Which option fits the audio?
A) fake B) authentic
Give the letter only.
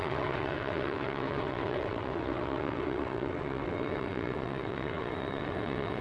A